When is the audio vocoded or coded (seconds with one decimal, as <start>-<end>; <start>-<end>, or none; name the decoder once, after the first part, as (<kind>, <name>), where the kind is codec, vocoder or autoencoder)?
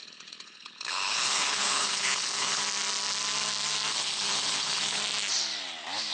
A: 0.0-2.6 (codec, HILCodec); 3.9-5.0